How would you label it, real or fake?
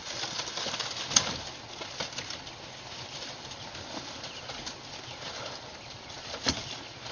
real